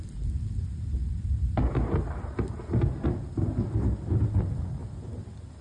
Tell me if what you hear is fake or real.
real